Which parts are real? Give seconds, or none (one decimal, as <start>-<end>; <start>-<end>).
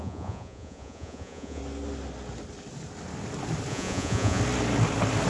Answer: 1.6-3.7; 4.4-5.3